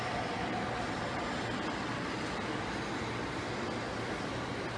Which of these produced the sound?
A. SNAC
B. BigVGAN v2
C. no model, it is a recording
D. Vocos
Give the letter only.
C